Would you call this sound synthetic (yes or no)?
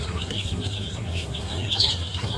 yes